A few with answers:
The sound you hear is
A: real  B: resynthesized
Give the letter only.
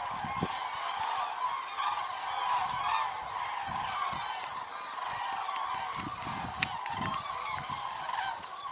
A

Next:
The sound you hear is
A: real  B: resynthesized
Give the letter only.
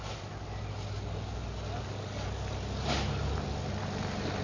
A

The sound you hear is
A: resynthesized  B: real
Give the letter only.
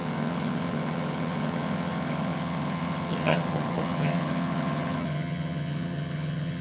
A